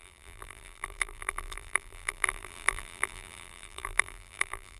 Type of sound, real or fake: fake